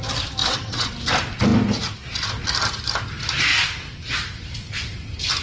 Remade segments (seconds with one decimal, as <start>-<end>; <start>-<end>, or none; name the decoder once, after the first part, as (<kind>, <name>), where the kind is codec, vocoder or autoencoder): 0.4-0.9 (vocoder, WaveNeXt)